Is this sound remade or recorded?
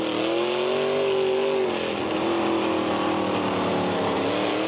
recorded